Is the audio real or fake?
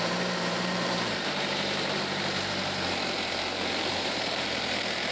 fake